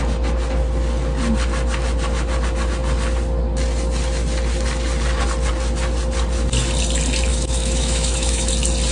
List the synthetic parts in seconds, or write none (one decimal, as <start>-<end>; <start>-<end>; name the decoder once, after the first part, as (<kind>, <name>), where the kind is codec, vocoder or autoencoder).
7.3-8.5 (autoencoder, DAC-VAE)